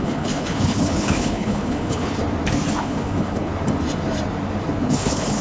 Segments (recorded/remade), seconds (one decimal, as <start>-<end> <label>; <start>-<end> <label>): 0.0-2.2 remade; 2.2-2.8 recorded; 2.8-3.5 remade; 3.5-4.8 recorded; 4.8-5.4 remade